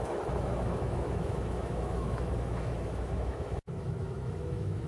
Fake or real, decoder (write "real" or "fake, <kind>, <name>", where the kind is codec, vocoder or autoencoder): fake, autoencoder, DAC-VAE